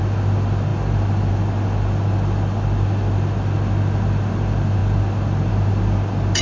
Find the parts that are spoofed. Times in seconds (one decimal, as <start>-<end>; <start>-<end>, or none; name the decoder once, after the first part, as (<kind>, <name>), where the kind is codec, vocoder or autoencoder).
none